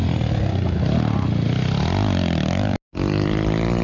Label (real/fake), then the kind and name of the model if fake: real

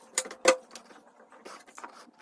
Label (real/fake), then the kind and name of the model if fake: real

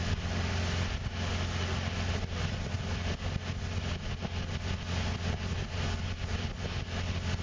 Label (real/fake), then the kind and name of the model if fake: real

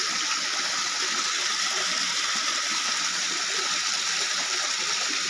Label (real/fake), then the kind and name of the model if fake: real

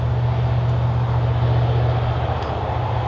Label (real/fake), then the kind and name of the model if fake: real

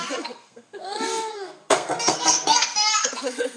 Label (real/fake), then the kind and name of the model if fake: fake, codec, SNAC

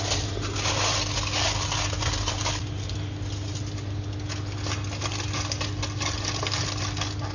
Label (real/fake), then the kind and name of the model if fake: real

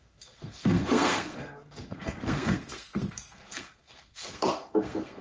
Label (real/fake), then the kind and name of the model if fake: fake, codec, SNAC